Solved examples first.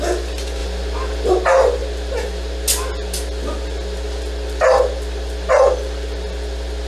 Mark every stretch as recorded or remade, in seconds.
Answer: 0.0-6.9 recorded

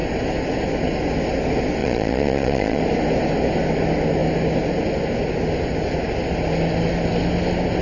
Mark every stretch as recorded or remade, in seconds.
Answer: 0.0-1.8 recorded; 1.8-2.8 remade; 2.8-7.8 recorded

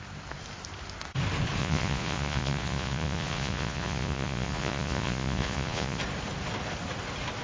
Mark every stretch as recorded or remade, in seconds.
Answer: 0.0-1.6 recorded; 1.6-6.0 remade; 6.0-7.4 recorded

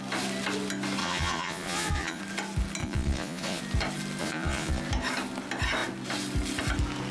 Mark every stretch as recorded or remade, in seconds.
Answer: 0.0-1.0 recorded; 1.0-2.2 remade; 2.2-2.8 recorded; 2.8-3.6 remade; 3.6-4.2 recorded; 4.2-4.8 remade; 4.8-7.1 recorded

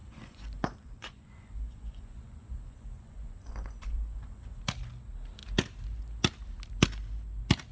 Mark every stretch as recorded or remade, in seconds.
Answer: 0.0-4.6 remade; 4.6-7.7 recorded

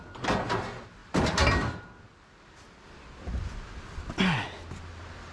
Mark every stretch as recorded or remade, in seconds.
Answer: 0.0-5.3 recorded

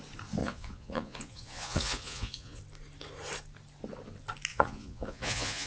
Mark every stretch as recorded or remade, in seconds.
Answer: 0.0-0.4 recorded; 0.4-2.6 remade; 2.6-4.5 recorded; 4.5-5.7 remade

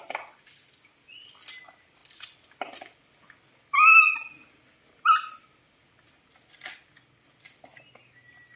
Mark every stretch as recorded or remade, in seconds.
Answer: 0.0-8.6 recorded